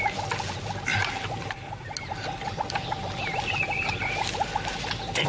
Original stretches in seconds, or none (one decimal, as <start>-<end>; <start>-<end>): 0.0-5.3